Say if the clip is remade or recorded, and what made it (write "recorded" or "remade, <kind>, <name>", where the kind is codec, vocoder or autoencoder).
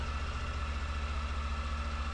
recorded